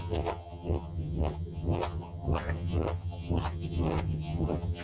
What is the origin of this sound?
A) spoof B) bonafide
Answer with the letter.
A